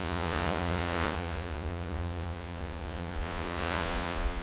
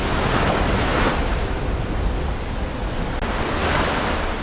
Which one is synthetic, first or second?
first